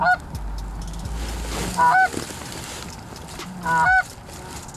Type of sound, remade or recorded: recorded